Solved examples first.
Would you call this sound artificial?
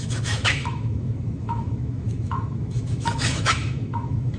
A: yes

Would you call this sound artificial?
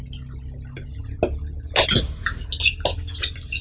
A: no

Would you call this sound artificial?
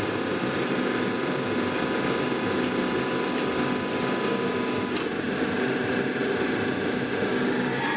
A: no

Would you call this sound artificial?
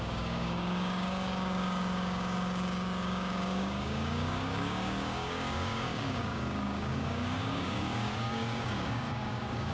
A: yes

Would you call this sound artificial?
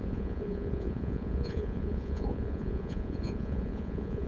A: yes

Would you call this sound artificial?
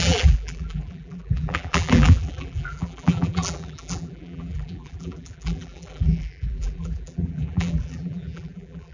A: yes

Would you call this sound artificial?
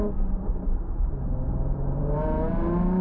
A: yes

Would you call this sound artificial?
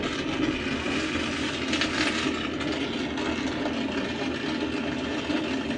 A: no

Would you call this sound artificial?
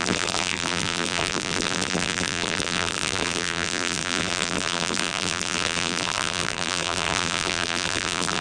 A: yes